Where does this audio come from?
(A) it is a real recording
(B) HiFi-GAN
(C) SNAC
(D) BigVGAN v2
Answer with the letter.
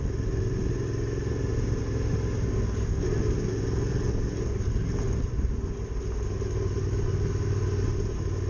A